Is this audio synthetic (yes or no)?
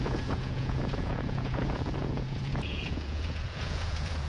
yes